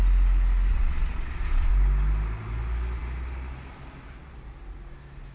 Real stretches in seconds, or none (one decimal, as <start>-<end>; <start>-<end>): 0.0-0.7; 1.7-5.3